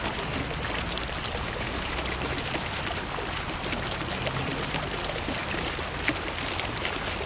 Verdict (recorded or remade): recorded